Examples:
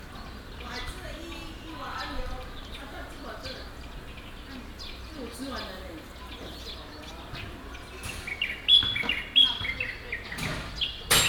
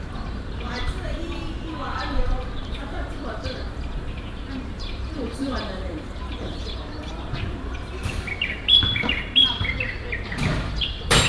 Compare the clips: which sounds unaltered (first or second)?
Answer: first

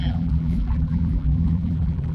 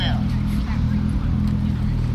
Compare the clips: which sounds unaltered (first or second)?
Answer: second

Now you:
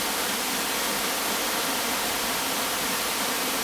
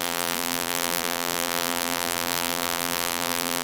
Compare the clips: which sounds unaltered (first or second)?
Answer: first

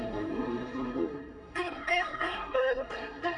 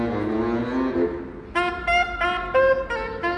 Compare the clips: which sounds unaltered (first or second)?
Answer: second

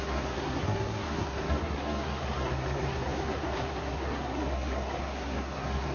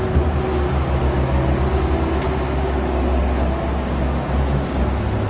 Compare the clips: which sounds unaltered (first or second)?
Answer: second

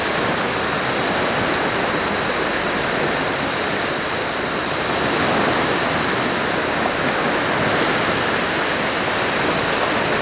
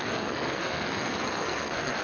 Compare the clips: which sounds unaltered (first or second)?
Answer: first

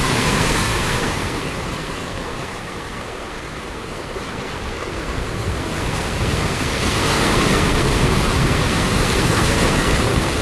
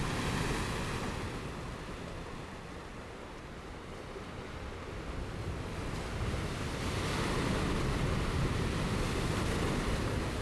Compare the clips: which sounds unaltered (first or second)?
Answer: second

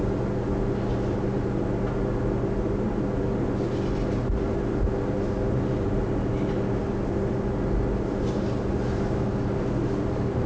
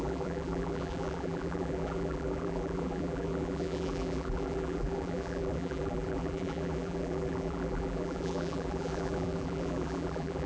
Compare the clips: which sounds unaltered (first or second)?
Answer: first